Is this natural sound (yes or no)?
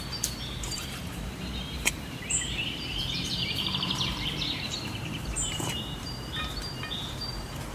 no